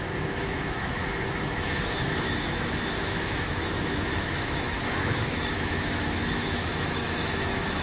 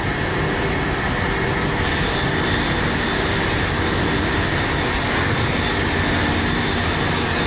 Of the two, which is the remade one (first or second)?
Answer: first